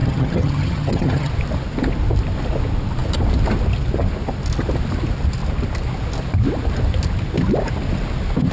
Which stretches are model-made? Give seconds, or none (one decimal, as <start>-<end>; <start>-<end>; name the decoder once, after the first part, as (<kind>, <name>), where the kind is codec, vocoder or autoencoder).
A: 0.0-1.3 (vocoder, HiFi-GAN)